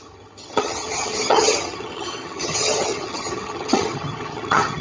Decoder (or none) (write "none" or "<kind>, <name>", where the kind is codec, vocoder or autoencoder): vocoder, HiFi-GAN